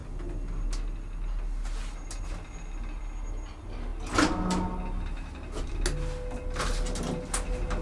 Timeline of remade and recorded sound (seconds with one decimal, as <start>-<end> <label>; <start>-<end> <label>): 0.0-7.8 recorded